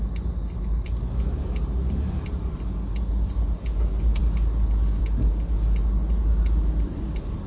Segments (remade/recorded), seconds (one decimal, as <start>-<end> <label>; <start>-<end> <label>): 0.0-7.5 recorded